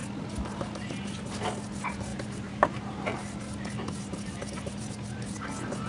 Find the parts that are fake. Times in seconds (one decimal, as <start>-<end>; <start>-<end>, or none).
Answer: 2.1-4.9